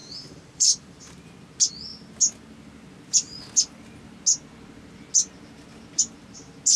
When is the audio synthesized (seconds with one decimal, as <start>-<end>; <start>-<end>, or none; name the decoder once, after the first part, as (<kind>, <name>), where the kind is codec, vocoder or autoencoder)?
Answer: 0.0-1.0 (vocoder, BigVGAN v2)